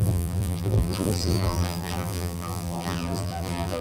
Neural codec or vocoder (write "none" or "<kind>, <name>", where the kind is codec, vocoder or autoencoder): vocoder, BigVGAN v2